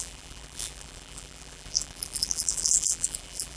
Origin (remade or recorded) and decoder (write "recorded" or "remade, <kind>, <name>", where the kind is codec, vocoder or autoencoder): remade, vocoder, BigVGAN v2